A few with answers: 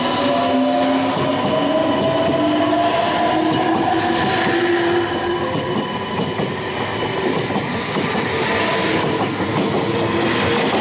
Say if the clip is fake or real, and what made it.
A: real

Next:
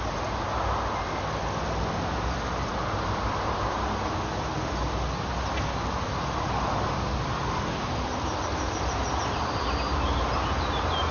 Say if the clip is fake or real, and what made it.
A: real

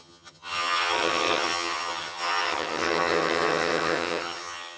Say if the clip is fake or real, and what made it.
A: fake, vocoder, HiFi-GAN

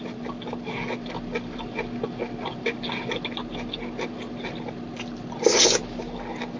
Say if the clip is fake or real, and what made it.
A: real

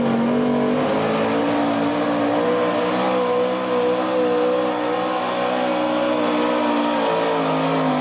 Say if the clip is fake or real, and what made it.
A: real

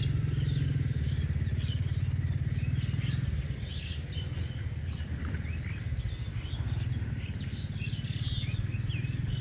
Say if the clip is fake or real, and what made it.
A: real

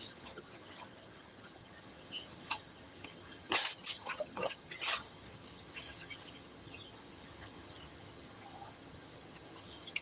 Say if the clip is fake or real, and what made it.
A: fake, vocoder, HiFi-GAN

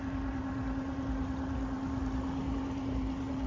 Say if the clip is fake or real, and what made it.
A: real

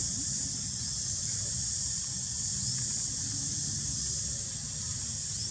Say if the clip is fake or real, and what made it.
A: real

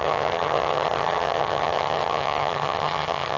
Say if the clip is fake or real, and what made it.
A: fake, vocoder, HiFi-GAN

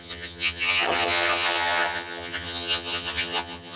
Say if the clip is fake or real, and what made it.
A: fake, vocoder, HiFi-GAN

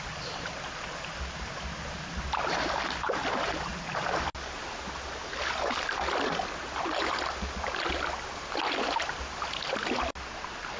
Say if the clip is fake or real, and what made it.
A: real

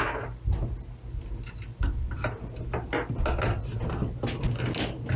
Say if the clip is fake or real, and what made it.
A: real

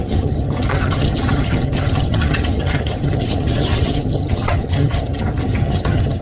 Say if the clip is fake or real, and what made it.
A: fake, vocoder, HiFi-GAN